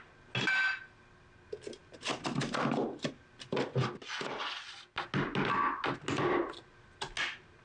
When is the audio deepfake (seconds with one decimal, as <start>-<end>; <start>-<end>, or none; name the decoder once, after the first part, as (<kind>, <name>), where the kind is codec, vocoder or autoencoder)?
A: none

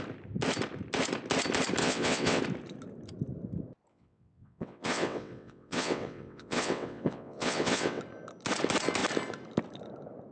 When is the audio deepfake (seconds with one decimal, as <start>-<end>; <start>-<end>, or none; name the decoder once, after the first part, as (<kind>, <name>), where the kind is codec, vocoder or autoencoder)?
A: 1.8-2.4 (vocoder, WaveNeXt); 3.9-8.0

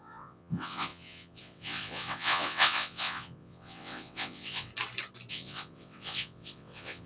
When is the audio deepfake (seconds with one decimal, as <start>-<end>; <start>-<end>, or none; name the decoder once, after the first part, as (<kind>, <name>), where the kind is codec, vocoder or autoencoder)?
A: 0.0-4.7 (vocoder, WaveNeXt); 5.3-7.1

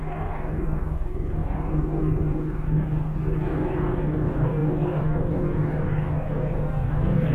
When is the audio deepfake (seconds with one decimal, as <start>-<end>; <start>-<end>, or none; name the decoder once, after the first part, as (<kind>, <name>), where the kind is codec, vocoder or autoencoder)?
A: 0.0-7.3 (codec, DAC)

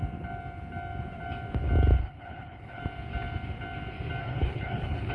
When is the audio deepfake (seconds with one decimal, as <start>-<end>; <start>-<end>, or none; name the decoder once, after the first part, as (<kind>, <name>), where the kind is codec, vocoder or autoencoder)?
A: 2.0-2.8 (codec, HILCodec); 4.2-5.1

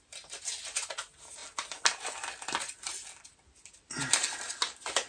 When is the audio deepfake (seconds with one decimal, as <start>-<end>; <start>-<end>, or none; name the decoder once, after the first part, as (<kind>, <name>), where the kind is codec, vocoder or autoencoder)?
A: none